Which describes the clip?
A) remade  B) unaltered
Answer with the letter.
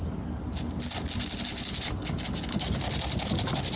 B